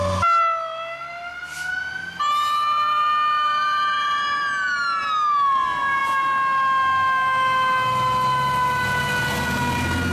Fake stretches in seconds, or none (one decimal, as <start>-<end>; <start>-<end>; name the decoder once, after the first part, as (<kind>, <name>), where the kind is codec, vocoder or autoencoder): none